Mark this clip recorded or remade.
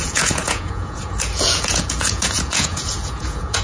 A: remade